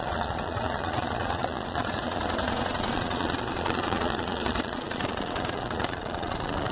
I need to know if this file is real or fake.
fake